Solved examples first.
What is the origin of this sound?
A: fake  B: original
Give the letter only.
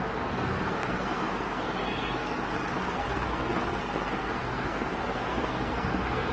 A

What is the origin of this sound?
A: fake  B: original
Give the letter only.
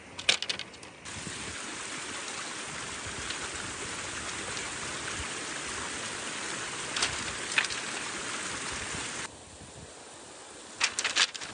B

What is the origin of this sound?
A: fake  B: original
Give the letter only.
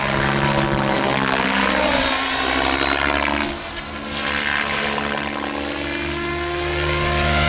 B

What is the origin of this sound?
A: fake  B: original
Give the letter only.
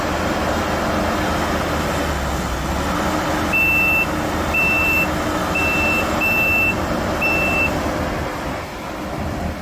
B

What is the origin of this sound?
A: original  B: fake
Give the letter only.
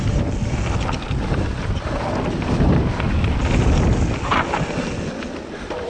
A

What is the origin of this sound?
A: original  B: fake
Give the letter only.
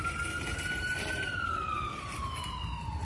A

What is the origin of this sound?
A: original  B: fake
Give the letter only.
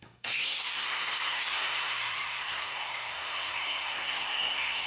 B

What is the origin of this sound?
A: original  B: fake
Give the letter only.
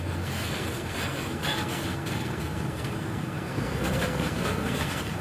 B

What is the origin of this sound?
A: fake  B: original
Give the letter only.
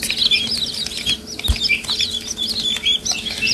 B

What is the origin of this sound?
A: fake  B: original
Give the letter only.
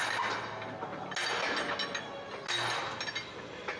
B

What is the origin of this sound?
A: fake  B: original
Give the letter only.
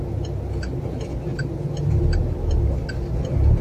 B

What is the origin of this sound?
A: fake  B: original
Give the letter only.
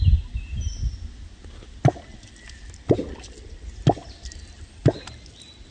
B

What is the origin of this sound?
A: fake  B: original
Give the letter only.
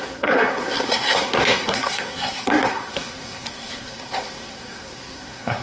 A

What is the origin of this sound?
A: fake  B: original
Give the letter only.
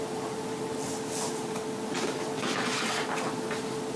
B